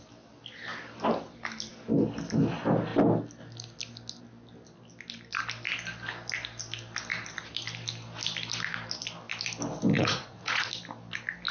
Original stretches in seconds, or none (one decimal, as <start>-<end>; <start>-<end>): 0.0-9.9; 10.7-11.5